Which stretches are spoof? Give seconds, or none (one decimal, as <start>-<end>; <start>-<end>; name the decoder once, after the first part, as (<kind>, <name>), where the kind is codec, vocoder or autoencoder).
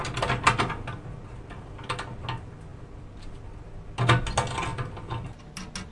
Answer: none